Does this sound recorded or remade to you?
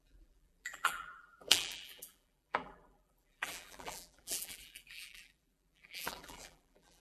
remade